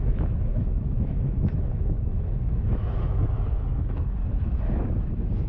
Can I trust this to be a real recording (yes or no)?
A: no